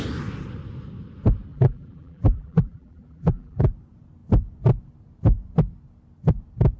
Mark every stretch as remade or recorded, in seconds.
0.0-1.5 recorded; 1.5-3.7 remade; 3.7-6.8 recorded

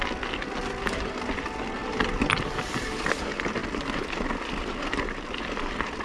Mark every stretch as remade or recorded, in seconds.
0.0-3.6 recorded; 3.6-4.3 remade; 4.3-6.0 recorded

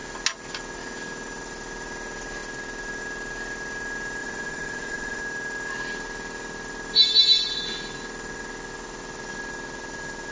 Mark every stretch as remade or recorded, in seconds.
0.0-4.2 recorded; 4.2-5.2 remade; 5.2-10.3 recorded

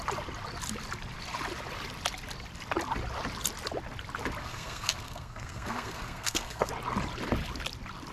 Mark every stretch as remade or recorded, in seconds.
0.0-4.4 recorded; 4.4-6.7 remade; 6.7-8.1 recorded

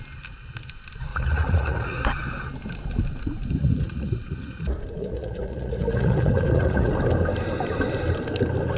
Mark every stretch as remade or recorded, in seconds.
0.0-1.1 recorded; 1.1-2.0 remade; 2.0-3.6 recorded; 3.6-6.9 remade; 6.9-8.8 recorded

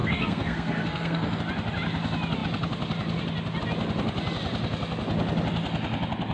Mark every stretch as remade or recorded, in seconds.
0.0-1.4 remade; 1.4-6.3 recorded

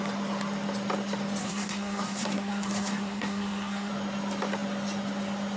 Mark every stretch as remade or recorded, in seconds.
0.0-1.4 recorded; 1.4-3.9 remade; 3.9-5.6 recorded

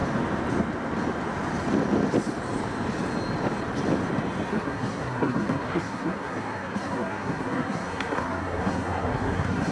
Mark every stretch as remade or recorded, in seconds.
0.0-4.5 recorded; 4.5-9.7 remade